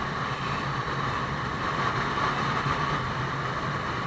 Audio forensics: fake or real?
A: real